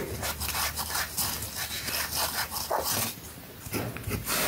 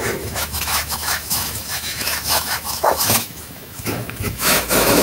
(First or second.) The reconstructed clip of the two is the second